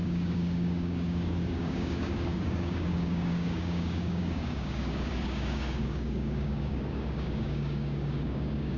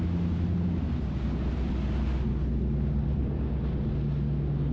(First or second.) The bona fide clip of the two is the second